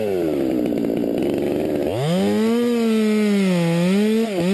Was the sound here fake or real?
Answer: real